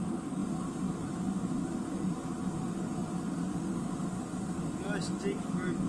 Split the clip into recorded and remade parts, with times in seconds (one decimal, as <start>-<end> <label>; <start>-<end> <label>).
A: 0.0-5.9 recorded